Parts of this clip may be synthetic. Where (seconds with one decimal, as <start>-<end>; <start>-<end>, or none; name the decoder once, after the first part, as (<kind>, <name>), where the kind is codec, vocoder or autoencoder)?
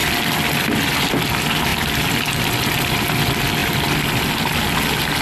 0.0-1.0 (vocoder, BigVGAN v2); 3.6-4.4